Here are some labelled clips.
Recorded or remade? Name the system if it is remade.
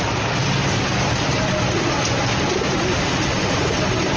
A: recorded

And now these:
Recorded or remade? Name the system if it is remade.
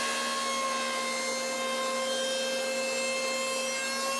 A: recorded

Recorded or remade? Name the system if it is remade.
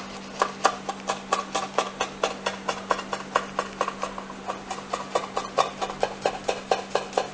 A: recorded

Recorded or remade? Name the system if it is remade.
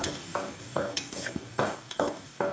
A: remade, codec, DAC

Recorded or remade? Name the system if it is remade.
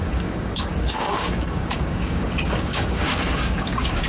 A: remade, codec, DAC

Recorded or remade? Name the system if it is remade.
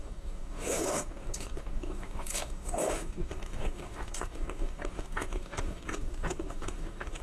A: remade, codec, DAC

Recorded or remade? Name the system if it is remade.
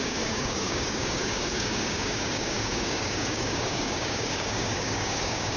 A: remade, codec, DAC